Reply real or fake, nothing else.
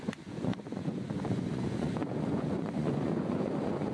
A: fake